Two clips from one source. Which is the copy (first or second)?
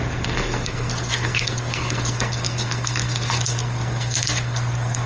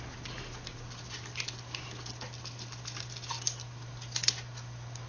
first